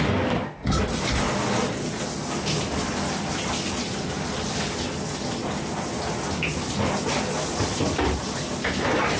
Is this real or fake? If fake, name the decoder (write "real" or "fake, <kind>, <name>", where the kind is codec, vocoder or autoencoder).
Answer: real